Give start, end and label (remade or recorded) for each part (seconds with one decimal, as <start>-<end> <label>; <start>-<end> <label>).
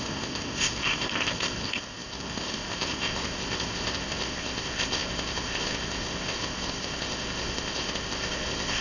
0.0-8.8 remade